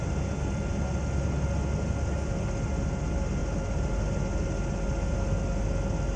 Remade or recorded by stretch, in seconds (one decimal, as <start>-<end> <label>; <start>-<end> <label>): 0.0-6.2 recorded